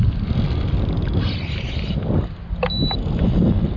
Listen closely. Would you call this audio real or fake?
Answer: real